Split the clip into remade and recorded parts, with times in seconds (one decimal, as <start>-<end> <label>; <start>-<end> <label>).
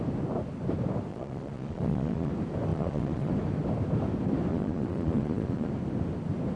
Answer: 0.0-1.1 recorded; 1.1-2.3 remade; 2.3-2.7 recorded; 2.7-3.3 remade; 3.3-4.5 recorded; 4.5-5.7 remade; 5.7-6.6 recorded